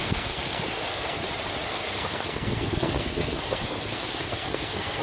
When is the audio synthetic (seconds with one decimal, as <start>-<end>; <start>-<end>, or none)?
0.0-1.2; 1.7-5.0